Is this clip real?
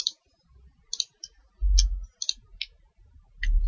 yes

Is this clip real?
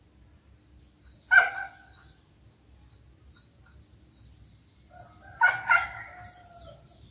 yes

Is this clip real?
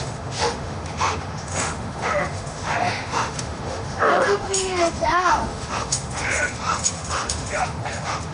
no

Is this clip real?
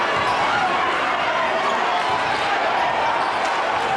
yes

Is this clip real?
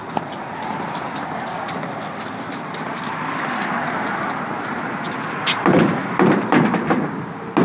yes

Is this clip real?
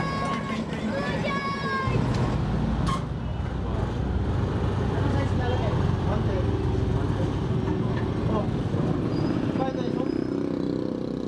yes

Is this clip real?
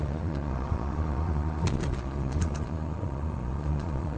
no